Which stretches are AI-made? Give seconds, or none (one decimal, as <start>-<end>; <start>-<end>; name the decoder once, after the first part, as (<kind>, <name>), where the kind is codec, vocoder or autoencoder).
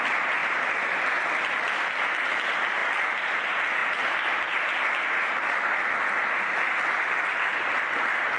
0.4-1.3 (vocoder, BigVGAN v2); 3.8-4.4; 7.5-8.4